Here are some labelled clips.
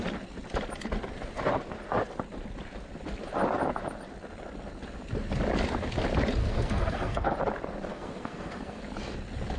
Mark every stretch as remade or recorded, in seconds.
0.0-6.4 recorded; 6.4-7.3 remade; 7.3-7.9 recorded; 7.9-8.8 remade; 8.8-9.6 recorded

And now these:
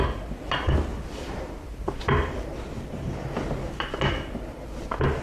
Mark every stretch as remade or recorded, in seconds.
0.0-0.9 recorded; 0.9-4.0 remade; 4.0-5.2 recorded

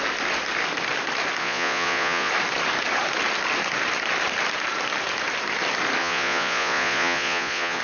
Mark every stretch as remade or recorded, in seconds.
0.0-1.4 recorded; 1.4-2.3 remade; 2.3-6.0 recorded; 6.0-7.8 remade